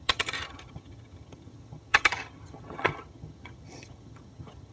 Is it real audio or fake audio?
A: fake